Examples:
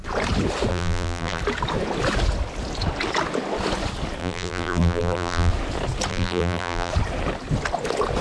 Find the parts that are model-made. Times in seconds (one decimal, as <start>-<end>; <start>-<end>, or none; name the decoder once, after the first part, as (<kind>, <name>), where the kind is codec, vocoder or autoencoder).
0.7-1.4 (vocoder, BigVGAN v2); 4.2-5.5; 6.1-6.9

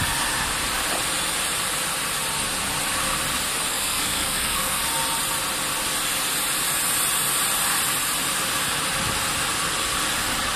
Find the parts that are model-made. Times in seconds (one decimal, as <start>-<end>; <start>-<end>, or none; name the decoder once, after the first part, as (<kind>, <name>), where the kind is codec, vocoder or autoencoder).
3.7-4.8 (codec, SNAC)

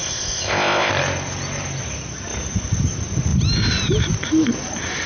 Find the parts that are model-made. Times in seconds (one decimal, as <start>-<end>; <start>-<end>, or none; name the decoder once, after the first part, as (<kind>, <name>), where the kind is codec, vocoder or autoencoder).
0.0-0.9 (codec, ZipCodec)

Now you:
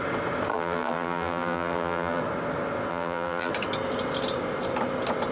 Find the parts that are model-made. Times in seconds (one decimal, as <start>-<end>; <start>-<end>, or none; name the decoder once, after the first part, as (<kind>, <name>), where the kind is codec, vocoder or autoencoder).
0.5-2.2 (vocoder, BigVGAN v2); 2.9-3.5

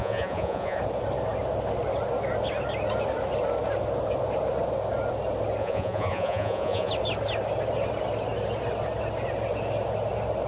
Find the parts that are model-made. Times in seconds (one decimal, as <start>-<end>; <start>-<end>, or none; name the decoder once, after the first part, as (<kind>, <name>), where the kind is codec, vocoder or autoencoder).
0.0-0.8 (vocoder, Vocos); 5.6-6.9

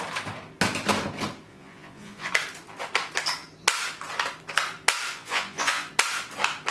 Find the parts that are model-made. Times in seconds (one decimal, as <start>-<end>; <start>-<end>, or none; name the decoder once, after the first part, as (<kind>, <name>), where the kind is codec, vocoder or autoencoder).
1.5-2.3 (vocoder, Vocos); 5.1-5.9

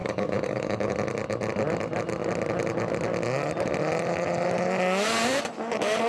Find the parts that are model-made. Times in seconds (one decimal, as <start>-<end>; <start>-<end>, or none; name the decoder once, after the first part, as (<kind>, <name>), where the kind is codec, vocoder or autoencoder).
0.0-0.9 (codec, DAC)